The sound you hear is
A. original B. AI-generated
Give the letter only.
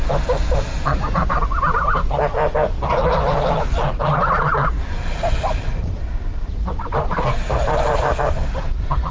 A